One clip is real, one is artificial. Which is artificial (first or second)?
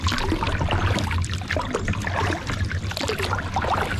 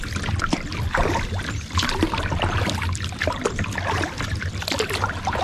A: second